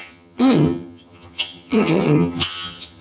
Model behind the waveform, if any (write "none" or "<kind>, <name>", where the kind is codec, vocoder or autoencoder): vocoder, HiFi-GAN